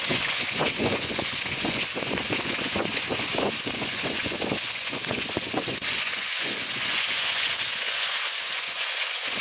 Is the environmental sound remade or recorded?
remade